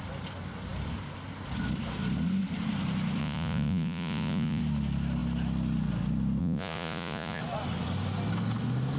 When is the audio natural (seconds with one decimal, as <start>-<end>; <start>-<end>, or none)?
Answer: 0.0-3.2; 4.6-6.4; 7.4-9.0